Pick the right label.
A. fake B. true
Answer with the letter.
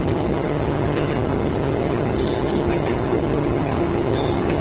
A